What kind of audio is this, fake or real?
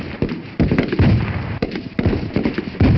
fake